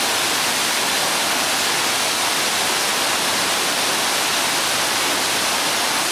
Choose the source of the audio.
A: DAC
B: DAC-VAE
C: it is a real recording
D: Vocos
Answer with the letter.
C